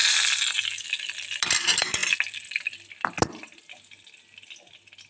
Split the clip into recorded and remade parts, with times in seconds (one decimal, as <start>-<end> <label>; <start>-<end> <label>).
0.0-5.1 recorded